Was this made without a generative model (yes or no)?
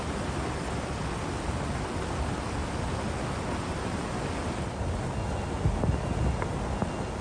yes